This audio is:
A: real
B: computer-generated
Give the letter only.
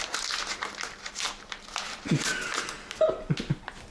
B